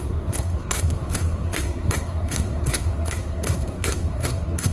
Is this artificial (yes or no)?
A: yes